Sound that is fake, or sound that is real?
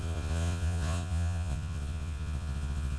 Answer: fake